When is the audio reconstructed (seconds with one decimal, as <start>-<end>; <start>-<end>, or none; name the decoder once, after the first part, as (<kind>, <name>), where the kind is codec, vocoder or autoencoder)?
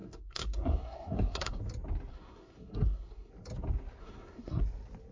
0.0-1.6 (codec, SNAC); 2.1-3.3; 4.0-4.6